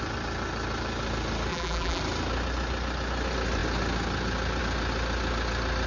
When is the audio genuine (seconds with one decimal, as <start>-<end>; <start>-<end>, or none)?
0.0-1.5; 2.0-5.9